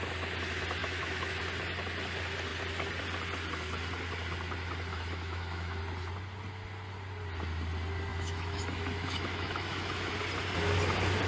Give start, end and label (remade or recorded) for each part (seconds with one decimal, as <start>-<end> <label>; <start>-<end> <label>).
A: 0.0-0.8 recorded; 0.8-1.4 remade; 1.4-4.9 recorded; 4.9-5.8 remade; 5.8-8.1 recorded; 8.1-10.1 remade; 10.1-11.3 recorded